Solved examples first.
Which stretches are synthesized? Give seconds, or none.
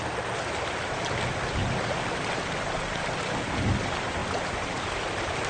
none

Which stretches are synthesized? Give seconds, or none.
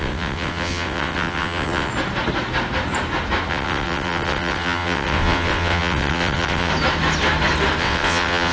0.0-1.9 (vocoder, WaveNeXt); 3.5-6.7; 7.8-8.5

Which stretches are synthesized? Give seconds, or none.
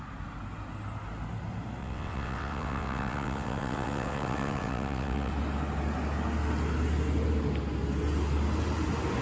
1.8-5.3 (vocoder, WaveNeXt)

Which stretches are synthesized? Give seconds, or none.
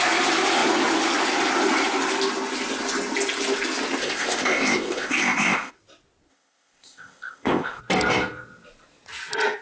4.0-5.7 (codec, ZipCodec); 6.3-7.8